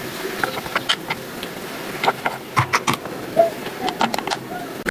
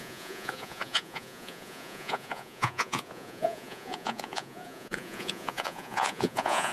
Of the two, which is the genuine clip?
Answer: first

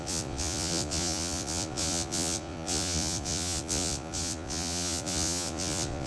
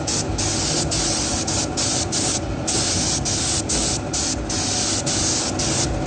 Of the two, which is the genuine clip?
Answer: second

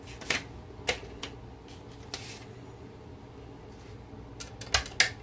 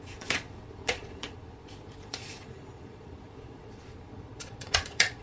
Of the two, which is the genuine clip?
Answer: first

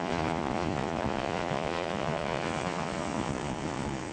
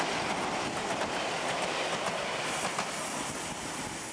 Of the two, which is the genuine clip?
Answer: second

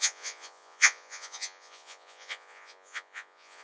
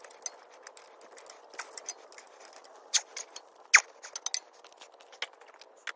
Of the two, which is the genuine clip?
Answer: second